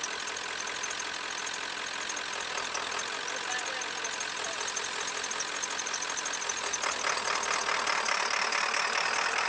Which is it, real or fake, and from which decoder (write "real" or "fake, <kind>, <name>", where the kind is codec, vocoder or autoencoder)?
real